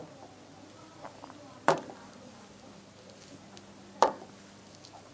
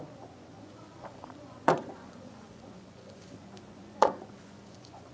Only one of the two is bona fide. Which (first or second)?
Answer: first